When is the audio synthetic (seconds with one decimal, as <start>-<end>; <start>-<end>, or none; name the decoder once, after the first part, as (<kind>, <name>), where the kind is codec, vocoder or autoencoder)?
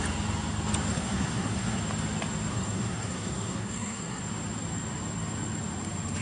0.9-1.8 (codec, SNAC); 2.5-4.2